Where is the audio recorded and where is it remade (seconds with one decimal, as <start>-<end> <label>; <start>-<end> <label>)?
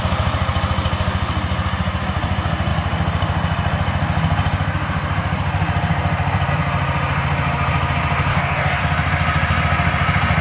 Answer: 0.0-8.3 recorded; 8.3-8.8 remade; 8.8-10.4 recorded